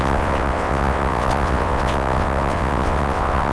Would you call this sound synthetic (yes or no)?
yes